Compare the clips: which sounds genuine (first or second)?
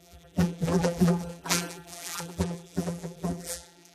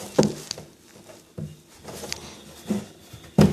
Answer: second